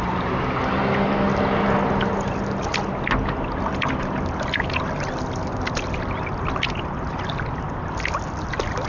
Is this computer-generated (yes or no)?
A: no